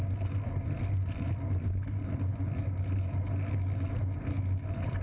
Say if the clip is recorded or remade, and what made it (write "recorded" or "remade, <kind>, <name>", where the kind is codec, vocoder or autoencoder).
recorded